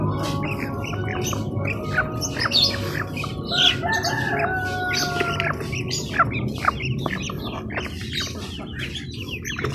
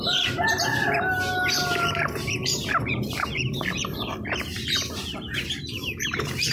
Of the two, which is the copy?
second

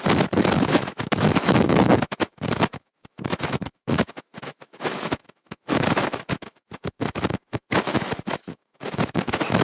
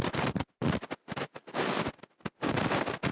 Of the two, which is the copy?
first